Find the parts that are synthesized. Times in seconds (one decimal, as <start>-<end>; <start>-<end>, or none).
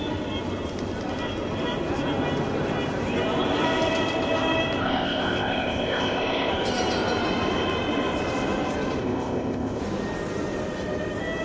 4.8-6.5; 9.0-9.8